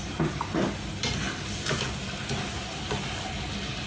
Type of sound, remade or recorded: recorded